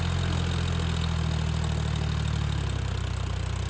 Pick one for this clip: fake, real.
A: real